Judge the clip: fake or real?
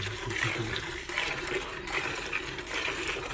real